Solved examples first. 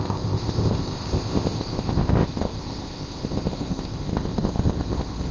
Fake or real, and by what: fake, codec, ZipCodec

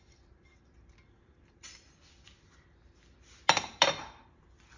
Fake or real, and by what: real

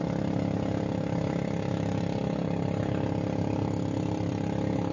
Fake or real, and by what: real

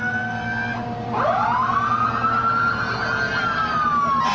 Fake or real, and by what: real